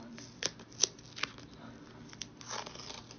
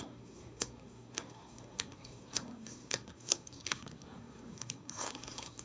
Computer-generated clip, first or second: second